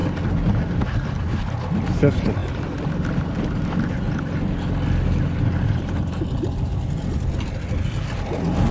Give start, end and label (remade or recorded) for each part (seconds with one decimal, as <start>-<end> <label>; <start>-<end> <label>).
0.0-8.7 recorded

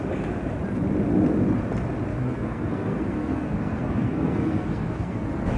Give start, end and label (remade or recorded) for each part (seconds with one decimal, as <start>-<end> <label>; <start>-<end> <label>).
0.0-2.1 recorded; 2.1-5.6 remade

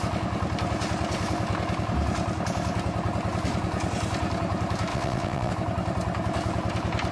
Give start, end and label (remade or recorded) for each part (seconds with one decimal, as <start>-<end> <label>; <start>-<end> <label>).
0.0-4.9 recorded; 4.9-5.5 remade; 5.5-7.1 recorded

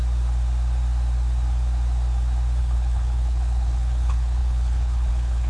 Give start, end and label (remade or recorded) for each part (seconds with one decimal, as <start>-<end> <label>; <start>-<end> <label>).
0.0-2.6 recorded; 2.6-5.5 remade

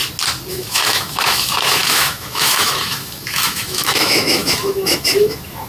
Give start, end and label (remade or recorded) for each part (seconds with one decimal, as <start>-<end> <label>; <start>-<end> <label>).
0.0-0.5 recorded; 0.5-5.7 remade